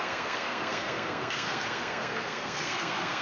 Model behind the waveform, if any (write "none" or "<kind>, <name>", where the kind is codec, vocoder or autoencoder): codec, SNAC